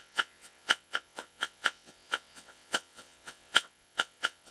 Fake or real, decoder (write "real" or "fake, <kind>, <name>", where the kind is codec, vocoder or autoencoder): fake, vocoder, WaveNeXt